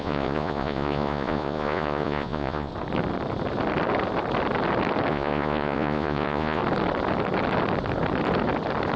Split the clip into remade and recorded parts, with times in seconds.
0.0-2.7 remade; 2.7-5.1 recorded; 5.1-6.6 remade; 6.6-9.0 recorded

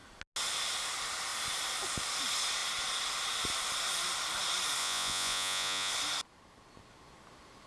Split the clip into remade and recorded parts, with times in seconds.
0.0-4.8 recorded; 4.8-5.9 remade; 5.9-7.7 recorded